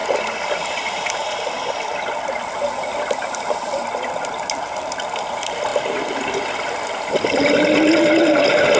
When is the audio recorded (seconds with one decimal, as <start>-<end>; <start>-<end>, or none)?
2.3-7.9